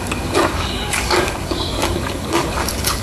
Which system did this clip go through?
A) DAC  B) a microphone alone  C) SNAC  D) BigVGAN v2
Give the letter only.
A